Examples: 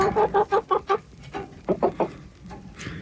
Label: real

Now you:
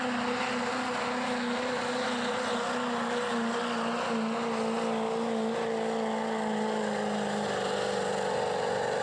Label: real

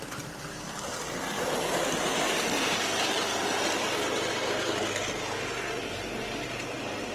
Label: real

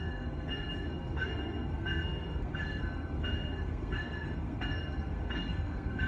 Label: fake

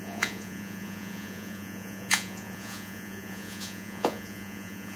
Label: fake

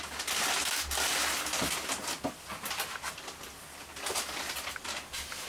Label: real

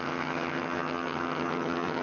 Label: fake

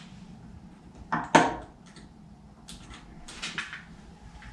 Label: real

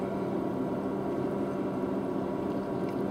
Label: fake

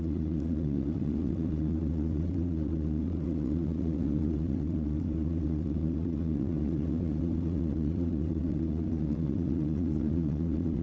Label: fake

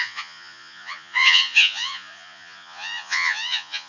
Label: fake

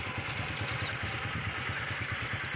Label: real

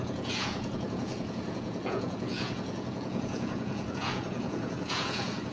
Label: fake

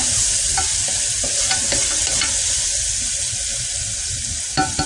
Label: real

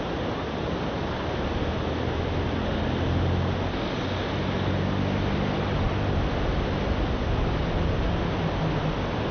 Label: real